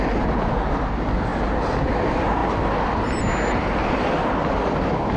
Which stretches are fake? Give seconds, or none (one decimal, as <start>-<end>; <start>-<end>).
none